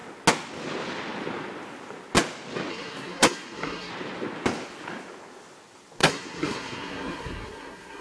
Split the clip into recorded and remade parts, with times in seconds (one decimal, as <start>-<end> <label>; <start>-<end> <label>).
0.0-2.7 recorded; 2.7-3.9 remade; 3.9-6.0 recorded; 6.0-8.0 remade